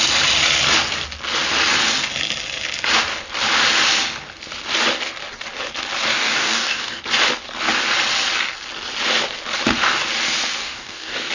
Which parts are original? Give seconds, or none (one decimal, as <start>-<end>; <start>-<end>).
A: 0.0-6.1; 7.0-10.6